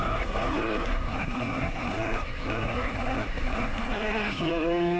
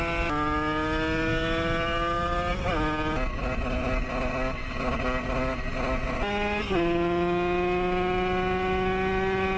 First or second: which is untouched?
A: second